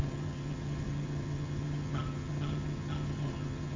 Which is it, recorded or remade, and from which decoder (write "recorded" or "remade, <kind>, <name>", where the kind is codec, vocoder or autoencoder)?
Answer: remade, vocoder, HiFi-GAN